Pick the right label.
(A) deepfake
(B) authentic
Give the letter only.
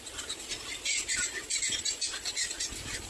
B